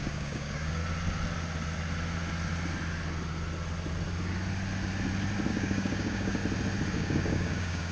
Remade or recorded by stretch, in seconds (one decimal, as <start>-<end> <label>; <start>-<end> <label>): 0.0-0.8 remade; 0.8-5.5 recorded; 5.5-6.4 remade; 6.4-6.9 recorded; 6.9-7.9 remade